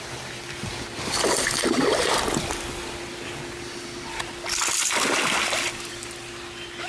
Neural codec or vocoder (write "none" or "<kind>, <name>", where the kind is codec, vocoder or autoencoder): none